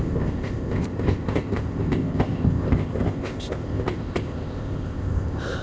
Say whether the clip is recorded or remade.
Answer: remade